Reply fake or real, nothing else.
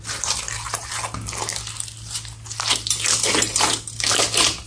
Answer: real